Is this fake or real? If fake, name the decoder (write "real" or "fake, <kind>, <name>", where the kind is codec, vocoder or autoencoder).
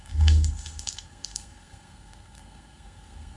fake, codec, SNAC